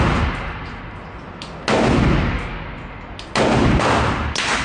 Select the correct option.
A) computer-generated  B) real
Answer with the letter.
B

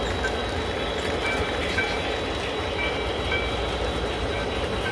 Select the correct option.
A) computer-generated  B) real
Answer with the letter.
B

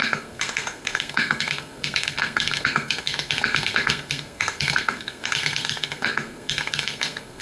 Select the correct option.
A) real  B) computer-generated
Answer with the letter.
B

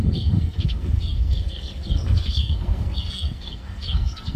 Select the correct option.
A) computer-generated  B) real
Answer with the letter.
A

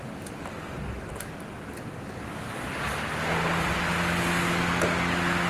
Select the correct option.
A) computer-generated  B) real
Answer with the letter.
B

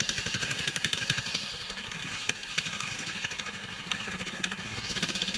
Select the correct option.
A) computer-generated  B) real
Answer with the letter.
A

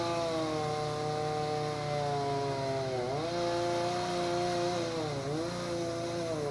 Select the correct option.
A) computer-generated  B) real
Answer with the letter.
B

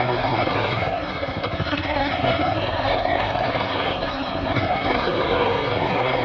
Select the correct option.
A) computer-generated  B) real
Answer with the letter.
A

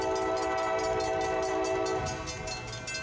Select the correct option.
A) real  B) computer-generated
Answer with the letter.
A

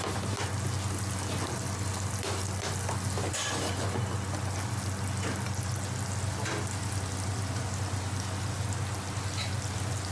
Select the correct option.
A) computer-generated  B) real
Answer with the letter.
B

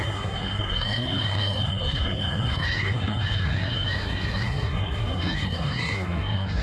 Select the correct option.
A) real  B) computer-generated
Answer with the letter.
B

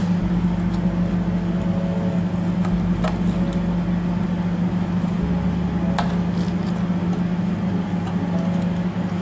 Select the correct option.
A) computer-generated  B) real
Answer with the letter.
B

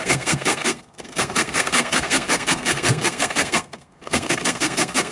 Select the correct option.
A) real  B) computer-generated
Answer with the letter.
B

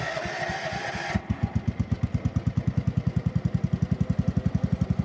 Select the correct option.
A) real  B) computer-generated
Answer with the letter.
A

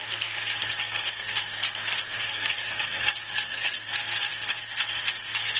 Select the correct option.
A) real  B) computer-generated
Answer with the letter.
B